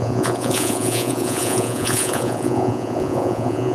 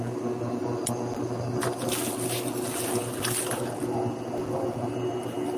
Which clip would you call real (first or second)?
second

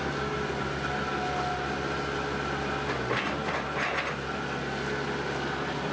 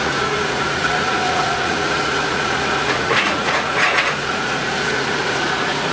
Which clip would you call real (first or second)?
first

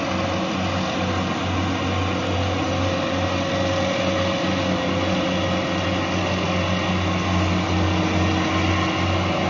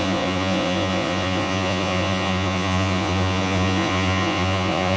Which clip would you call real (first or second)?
first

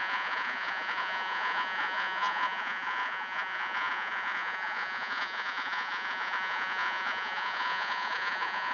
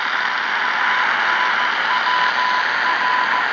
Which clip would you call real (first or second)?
second